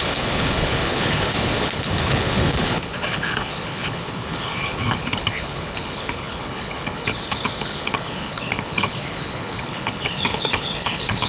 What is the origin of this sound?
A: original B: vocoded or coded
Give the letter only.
B